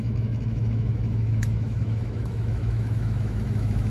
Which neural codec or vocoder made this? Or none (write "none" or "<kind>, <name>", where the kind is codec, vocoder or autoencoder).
autoencoder, DAC-VAE